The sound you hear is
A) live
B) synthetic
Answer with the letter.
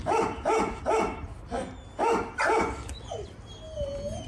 A